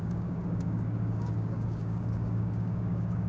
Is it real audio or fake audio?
fake